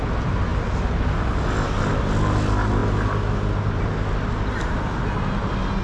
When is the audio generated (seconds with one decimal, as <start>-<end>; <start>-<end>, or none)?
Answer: none